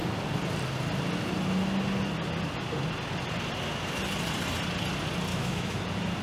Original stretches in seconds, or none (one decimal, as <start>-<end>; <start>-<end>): 0.0-5.3; 5.8-6.2